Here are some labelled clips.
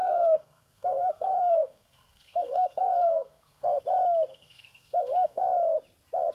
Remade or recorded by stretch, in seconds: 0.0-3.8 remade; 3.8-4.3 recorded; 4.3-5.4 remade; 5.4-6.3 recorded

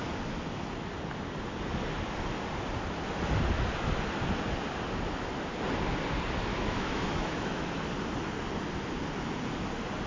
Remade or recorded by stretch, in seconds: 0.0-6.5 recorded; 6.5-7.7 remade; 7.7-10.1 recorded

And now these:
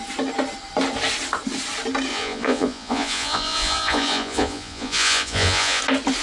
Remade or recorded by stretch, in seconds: 0.0-2.1 recorded; 2.1-5.8 remade; 5.8-6.2 recorded

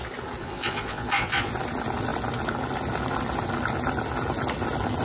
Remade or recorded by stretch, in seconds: 0.0-0.4 recorded; 0.4-1.5 remade; 1.5-5.0 recorded

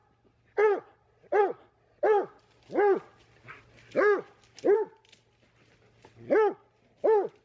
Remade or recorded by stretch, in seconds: 0.0-7.4 recorded

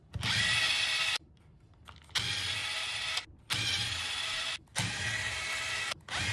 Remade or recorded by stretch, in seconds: 0.0-6.3 recorded

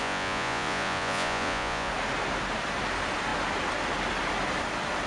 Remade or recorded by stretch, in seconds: 0.0-1.9 remade; 1.9-5.1 recorded

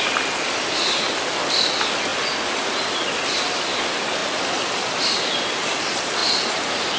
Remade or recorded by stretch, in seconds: 0.0-7.0 recorded